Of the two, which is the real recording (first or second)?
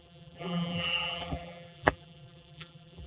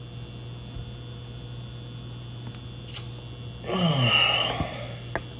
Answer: second